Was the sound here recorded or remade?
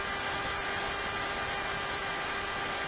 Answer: recorded